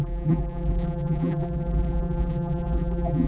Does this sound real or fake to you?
fake